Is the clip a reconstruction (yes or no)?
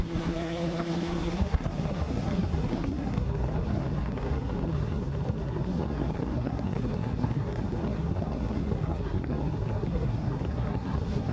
yes